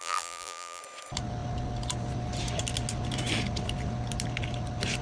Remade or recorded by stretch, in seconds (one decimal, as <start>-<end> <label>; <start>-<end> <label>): 0.0-0.8 remade; 0.8-5.0 recorded